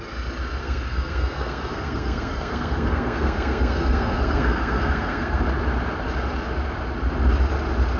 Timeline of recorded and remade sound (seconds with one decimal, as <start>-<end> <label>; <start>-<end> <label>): 0.0-0.6 recorded; 0.6-5.4 remade; 5.4-8.0 recorded

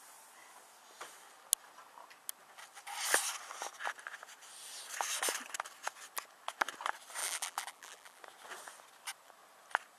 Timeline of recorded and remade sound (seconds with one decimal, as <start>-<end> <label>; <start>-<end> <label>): 0.0-7.2 recorded; 7.2-8.2 remade; 8.2-10.0 recorded

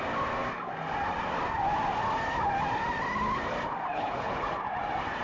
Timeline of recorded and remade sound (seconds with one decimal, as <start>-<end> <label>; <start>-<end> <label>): 0.0-3.9 recorded; 3.9-4.4 remade; 4.4-5.2 recorded